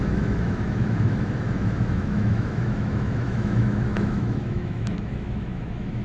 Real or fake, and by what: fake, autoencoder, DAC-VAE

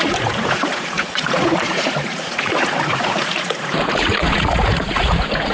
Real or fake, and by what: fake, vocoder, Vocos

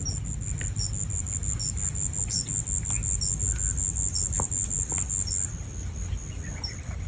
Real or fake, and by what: real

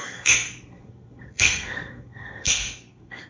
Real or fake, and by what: fake, codec, SNAC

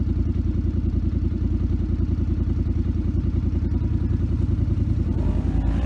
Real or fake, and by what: real